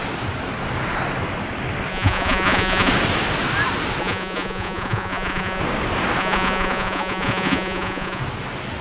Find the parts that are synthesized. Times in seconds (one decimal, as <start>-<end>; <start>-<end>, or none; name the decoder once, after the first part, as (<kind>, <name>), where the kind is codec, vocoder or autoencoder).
1.9-2.9 (vocoder, Vocos); 4.0-5.6; 6.2-8.2